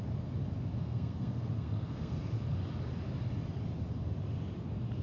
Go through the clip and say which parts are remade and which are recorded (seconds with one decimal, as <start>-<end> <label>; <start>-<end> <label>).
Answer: 0.0-0.8 recorded; 0.8-2.2 remade; 2.2-5.0 recorded